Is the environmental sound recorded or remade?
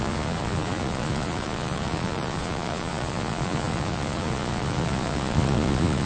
remade